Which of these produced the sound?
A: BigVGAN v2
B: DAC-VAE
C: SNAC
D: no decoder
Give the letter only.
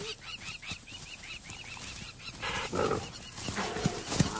D